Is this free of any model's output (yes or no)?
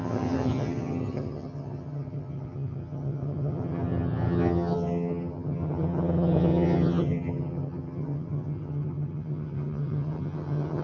no